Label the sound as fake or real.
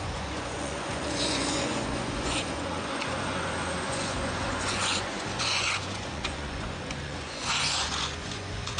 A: fake